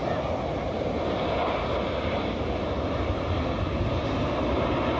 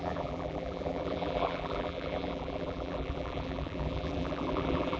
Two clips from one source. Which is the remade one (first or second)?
second